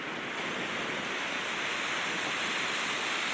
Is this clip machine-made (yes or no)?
no